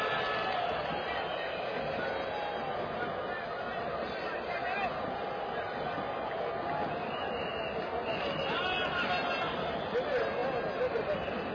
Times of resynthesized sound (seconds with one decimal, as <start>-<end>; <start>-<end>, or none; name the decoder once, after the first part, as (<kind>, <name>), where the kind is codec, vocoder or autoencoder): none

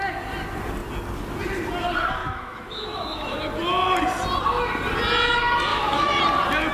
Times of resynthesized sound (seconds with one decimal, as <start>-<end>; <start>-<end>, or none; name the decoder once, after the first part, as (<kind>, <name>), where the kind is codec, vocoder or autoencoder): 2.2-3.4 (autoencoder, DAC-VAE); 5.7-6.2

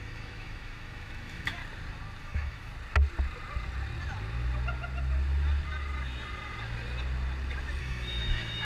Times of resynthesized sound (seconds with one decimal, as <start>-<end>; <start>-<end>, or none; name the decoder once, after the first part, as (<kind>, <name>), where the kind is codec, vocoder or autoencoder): 0.0-1.6 (autoencoder, DAC-VAE); 2.2-2.7; 7.8-8.6